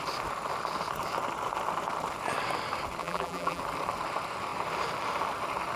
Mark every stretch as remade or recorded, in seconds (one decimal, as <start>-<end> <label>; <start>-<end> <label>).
0.0-3.0 recorded; 3.0-3.6 remade; 3.6-5.8 recorded